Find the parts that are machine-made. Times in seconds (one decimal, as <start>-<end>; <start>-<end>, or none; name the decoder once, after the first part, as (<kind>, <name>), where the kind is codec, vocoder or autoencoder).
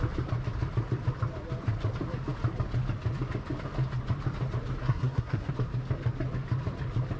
4.8-5.5 (codec, SNAC)